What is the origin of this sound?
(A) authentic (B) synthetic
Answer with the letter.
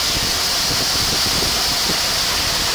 A